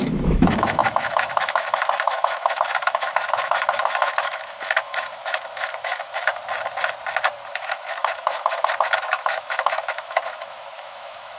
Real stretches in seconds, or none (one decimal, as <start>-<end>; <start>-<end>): 6.4-7.5